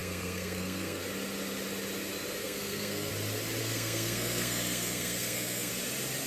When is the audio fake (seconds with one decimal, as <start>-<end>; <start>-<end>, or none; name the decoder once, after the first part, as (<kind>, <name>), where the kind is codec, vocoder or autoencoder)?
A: 0.0-1.0 (codec, SNAC); 2.4-3.1; 3.6-5.7